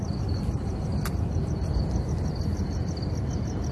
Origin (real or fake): real